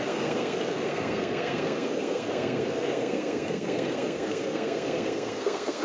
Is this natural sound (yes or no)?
no